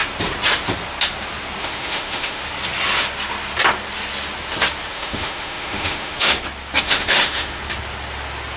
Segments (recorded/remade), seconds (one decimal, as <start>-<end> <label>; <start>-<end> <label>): 0.0-1.6 recorded; 1.6-2.4 remade; 2.4-4.9 recorded; 4.9-6.3 remade; 6.3-6.8 recorded; 6.8-7.6 remade; 7.6-8.6 recorded